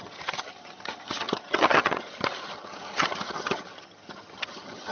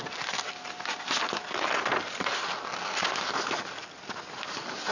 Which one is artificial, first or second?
first